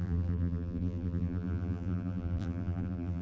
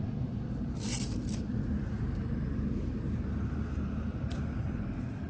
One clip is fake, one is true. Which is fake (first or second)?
first